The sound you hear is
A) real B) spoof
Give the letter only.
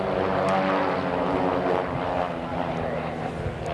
A